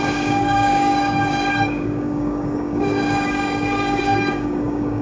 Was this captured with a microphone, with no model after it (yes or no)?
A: no